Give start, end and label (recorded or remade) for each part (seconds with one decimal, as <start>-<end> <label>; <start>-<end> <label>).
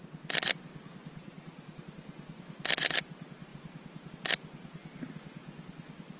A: 0.0-1.2 recorded; 1.2-1.8 remade; 1.8-6.2 recorded